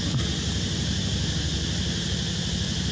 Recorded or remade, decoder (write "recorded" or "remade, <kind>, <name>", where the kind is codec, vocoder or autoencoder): recorded